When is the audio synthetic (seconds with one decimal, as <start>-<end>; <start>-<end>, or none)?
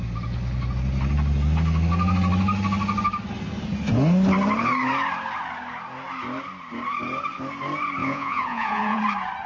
8.0-9.0